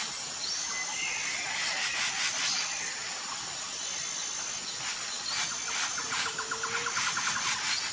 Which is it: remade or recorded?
recorded